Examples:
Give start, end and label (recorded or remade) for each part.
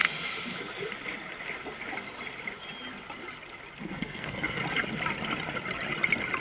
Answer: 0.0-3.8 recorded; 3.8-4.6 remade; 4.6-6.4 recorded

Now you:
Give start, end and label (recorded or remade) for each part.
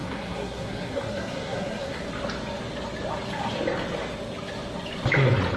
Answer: 0.0-2.0 remade; 2.0-5.6 recorded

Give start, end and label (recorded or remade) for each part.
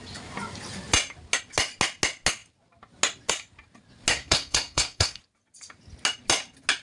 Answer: 0.0-4.1 recorded; 4.1-5.2 remade; 5.2-6.8 recorded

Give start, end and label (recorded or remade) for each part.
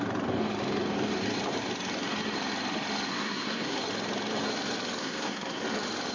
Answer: 0.0-3.1 recorded; 3.1-3.8 remade; 3.8-5.0 recorded; 5.0-5.6 remade; 5.6-6.1 recorded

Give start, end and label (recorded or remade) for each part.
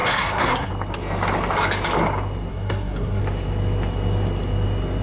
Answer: 0.0-0.7 remade; 0.7-2.5 recorded; 2.5-3.2 remade; 3.2-5.0 recorded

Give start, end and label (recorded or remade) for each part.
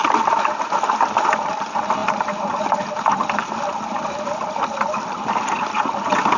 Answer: 0.0-6.4 recorded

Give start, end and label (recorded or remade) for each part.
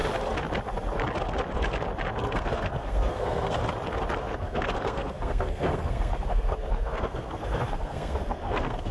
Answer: 0.0-2.2 recorded; 2.2-3.6 remade; 3.6-4.2 recorded; 4.2-8.9 remade